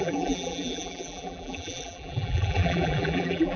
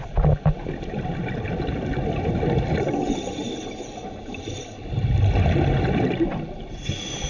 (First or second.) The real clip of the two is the second